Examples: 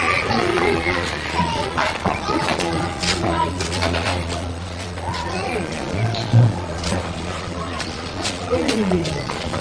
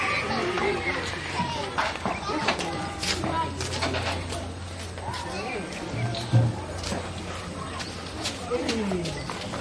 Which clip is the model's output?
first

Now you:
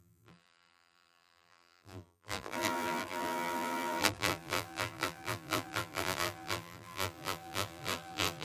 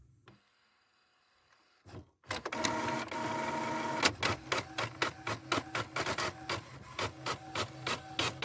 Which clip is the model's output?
first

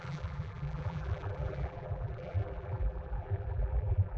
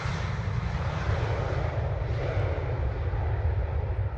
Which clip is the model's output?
first